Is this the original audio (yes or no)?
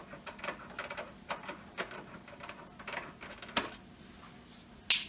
yes